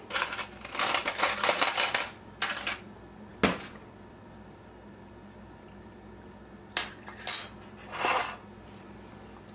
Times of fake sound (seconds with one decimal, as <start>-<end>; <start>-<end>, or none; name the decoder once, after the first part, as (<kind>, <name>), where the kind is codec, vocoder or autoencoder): none